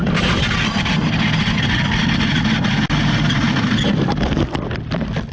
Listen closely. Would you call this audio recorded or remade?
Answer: recorded